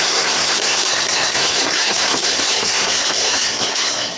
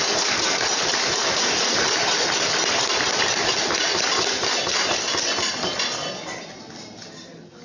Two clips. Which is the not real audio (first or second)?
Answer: first